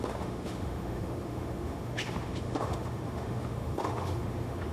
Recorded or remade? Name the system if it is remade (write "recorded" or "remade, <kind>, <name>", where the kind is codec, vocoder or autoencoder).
remade, autoencoder, DAC-VAE